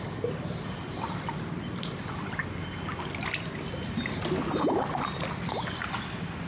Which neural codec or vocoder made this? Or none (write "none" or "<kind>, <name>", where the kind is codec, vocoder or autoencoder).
none